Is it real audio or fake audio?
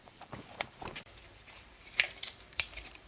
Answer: fake